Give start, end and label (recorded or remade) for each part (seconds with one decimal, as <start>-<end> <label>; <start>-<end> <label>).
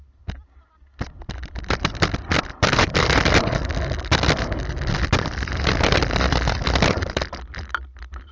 0.0-8.3 remade